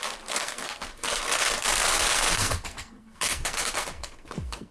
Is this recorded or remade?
remade